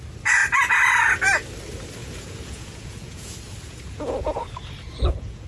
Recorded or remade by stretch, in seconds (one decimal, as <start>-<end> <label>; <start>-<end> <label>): 0.0-2.0 recorded; 2.0-5.5 remade